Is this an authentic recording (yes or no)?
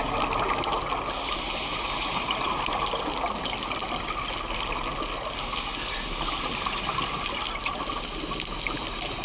yes